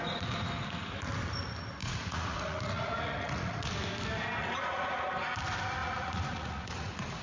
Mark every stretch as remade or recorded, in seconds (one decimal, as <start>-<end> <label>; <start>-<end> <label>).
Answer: 0.0-1.8 recorded; 1.8-3.7 remade; 3.7-4.4 recorded; 4.4-5.1 remade; 5.1-5.8 recorded; 5.8-7.2 remade